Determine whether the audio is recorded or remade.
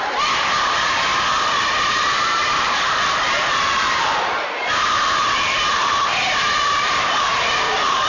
remade